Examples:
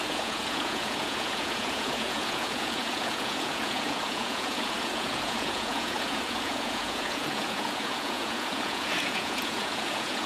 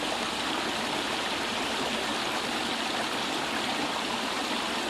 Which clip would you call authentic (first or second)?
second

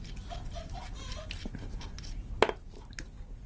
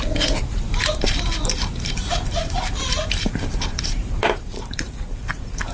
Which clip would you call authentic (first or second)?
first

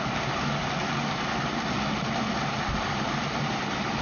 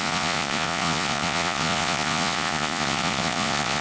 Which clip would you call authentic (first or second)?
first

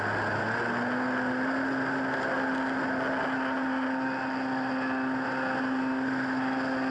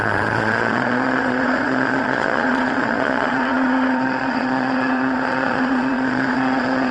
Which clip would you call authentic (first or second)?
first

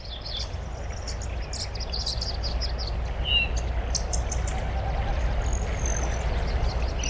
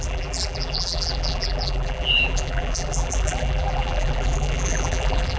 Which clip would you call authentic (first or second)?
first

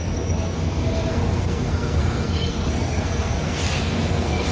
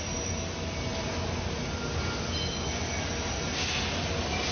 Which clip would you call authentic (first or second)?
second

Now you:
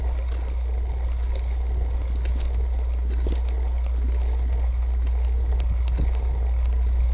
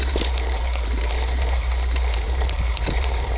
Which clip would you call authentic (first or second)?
first